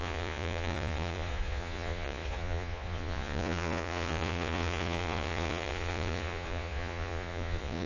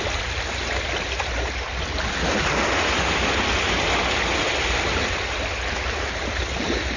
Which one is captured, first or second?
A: second